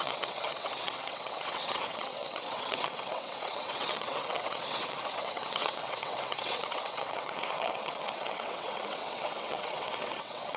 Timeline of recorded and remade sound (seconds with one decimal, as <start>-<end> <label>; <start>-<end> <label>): 0.0-10.6 remade